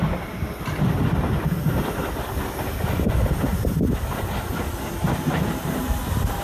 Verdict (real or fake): real